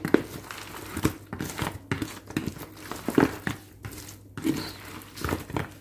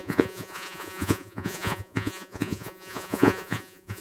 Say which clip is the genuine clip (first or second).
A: first